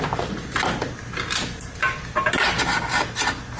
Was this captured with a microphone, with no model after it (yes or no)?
yes